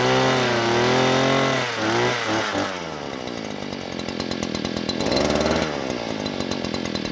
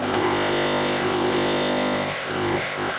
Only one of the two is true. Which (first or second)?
first